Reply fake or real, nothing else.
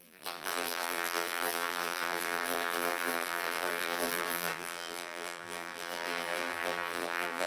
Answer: fake